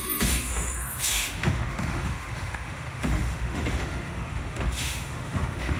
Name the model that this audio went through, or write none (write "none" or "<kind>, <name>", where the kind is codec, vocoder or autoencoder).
autoencoder, DAC-VAE